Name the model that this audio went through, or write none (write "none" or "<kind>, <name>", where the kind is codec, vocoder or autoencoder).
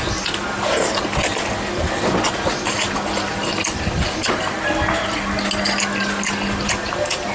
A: none